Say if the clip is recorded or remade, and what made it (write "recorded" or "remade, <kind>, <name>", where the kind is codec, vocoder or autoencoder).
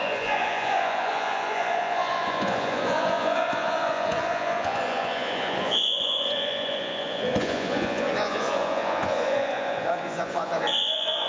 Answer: remade, vocoder, Vocos